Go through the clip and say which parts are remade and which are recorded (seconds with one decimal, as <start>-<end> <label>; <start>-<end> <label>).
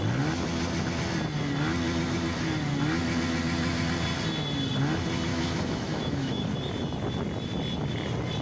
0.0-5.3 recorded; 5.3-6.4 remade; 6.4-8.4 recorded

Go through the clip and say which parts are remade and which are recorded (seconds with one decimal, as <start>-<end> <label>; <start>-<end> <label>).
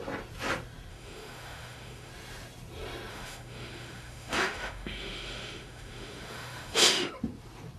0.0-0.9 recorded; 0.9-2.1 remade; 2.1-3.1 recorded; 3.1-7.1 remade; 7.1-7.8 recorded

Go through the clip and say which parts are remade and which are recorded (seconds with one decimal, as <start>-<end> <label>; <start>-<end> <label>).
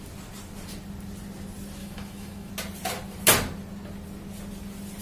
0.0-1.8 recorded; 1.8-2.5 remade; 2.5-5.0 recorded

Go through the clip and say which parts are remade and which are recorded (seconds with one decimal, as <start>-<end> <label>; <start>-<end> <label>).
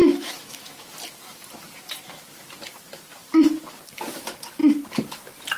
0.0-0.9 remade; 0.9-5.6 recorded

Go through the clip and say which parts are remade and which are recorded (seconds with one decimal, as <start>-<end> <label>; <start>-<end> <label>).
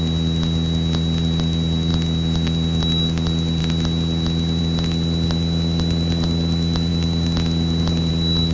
0.0-8.5 recorded